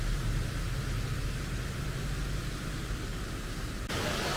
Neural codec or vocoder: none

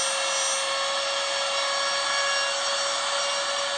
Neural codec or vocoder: none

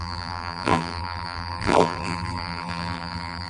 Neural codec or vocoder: vocoder, BigVGAN v2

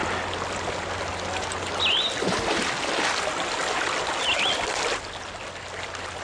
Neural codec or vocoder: none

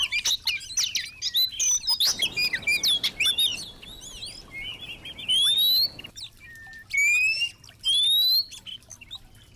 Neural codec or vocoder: none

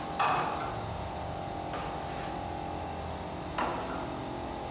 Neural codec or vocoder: none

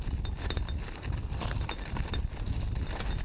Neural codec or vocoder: none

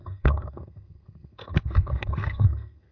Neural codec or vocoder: codec, SNAC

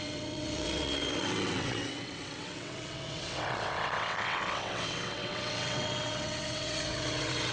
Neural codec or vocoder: vocoder, WaveNeXt